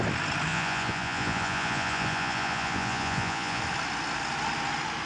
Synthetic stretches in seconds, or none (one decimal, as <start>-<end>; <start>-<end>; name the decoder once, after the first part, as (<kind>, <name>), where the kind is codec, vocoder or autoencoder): 0.5-3.6 (vocoder, Vocos)